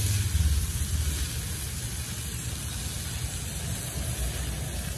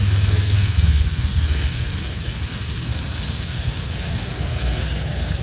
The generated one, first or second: second